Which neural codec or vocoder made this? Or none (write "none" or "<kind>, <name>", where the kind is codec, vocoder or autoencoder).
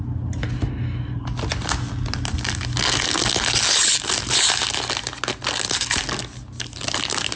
none